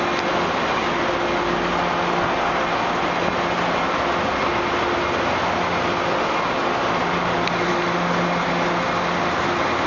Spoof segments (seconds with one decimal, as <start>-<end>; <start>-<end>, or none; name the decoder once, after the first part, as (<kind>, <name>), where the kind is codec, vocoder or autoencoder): none